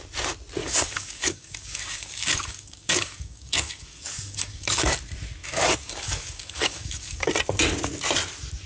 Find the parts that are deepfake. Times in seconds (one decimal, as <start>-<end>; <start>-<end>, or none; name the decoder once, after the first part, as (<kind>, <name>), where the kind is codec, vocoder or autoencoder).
0.6-4.9 (codec, DAC); 5.4-7.3